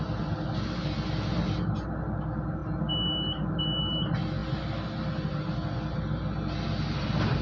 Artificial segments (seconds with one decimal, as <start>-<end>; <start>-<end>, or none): none

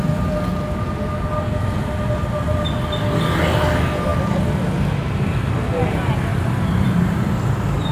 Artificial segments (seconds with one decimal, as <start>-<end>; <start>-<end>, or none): 6.3-7.3